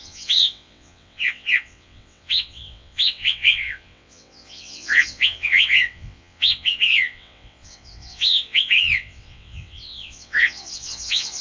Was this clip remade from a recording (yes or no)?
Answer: yes